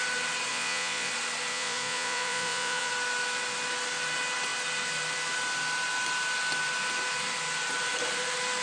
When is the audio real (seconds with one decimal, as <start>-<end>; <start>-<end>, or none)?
0.0-0.5; 1.1-1.5; 2.9-8.6